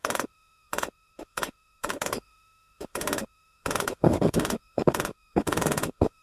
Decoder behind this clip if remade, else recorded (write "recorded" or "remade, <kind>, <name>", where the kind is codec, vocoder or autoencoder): remade, autoencoder, DAC-VAE